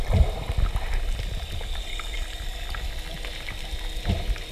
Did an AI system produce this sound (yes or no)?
no